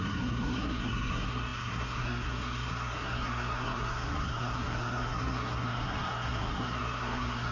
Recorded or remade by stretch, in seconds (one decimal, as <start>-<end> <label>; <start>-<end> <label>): 0.0-7.5 remade